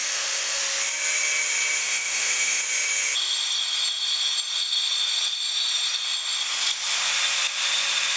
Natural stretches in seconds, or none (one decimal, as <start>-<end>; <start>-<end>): 0.6-1.8; 2.6-8.2